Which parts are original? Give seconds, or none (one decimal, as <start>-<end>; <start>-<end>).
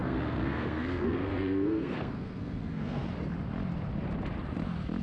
3.0-5.0